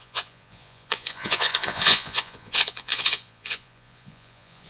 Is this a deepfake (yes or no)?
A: yes